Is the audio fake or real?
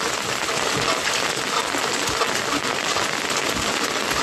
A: real